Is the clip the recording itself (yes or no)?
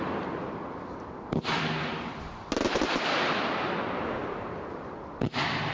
yes